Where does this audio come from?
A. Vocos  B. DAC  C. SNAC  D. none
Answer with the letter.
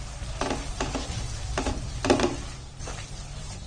D